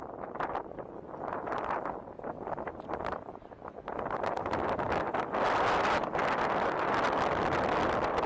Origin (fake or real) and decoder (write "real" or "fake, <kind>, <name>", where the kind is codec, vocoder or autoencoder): real